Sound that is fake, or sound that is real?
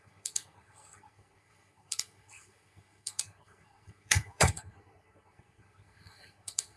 fake